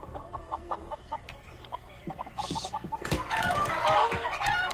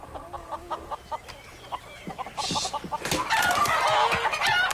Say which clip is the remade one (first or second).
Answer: first